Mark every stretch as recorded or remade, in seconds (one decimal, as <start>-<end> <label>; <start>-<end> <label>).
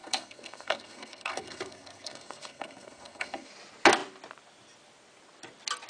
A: 0.0-3.5 remade; 3.5-5.9 recorded